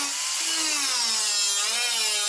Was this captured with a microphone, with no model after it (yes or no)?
yes